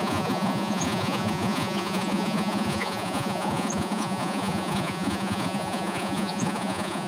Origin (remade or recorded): remade